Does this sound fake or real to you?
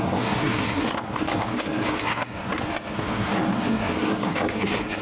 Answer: fake